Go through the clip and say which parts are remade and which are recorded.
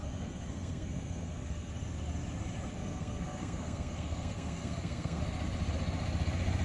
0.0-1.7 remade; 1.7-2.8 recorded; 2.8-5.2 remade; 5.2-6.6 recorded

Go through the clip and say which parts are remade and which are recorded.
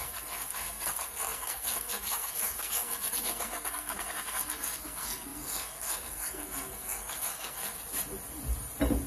0.0-7.8 remade; 7.8-9.1 recorded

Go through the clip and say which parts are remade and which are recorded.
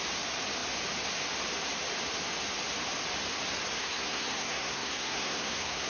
0.0-3.8 recorded; 3.8-5.9 remade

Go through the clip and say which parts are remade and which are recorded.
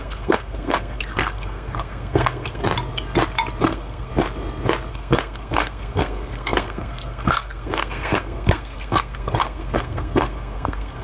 0.0-2.6 remade; 2.6-3.6 recorded; 3.6-4.1 remade; 4.1-4.9 recorded; 4.9-11.0 remade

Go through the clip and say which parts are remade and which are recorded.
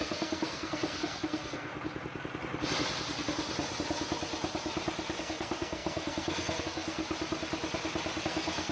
0.0-1.7 remade; 1.7-5.2 recorded; 5.2-7.0 remade; 7.0-8.2 recorded; 8.2-8.7 remade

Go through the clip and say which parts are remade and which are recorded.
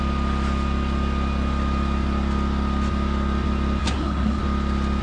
0.0-3.8 recorded; 3.8-4.4 remade; 4.4-5.0 recorded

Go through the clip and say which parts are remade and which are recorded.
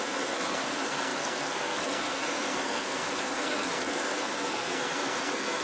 0.0-5.6 remade